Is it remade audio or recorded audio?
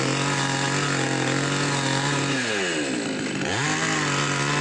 recorded